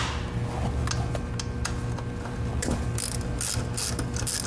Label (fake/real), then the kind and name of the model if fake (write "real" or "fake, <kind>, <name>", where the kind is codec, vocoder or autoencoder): real